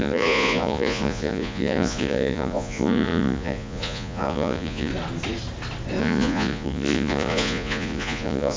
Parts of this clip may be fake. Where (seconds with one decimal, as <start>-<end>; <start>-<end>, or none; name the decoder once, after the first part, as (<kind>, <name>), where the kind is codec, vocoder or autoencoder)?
0.0-4.9 (vocoder, Vocos); 6.0-8.6